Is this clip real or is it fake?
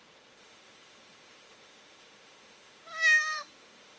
fake